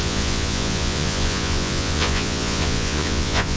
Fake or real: fake